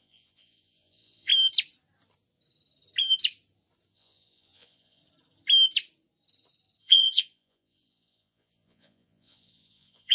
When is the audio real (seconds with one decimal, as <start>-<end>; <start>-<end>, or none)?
1.3-3.9; 5.0-6.8